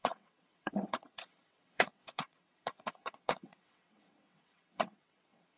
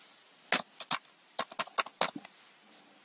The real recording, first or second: second